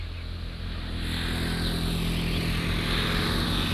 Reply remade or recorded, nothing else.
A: recorded